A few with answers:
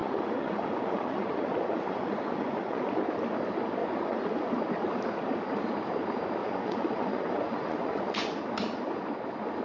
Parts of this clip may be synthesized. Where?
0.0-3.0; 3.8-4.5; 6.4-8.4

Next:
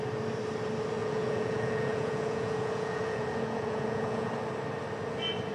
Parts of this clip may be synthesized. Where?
1.0-4.3

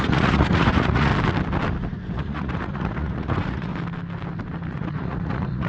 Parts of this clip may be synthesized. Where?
0.0-1.1; 2.1-3.7; 4.7-5.7

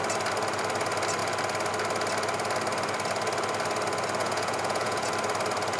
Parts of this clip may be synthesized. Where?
4.2-5.1

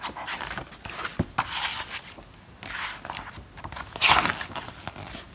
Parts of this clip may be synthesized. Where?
none

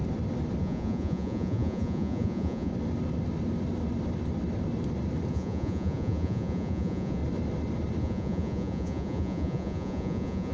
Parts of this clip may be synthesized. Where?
0.6-2.7; 5.3-7.2; 8.0-10.5